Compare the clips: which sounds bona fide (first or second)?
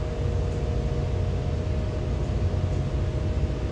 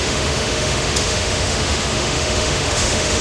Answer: first